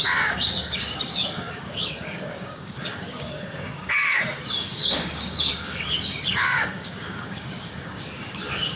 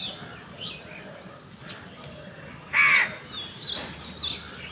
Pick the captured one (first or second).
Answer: second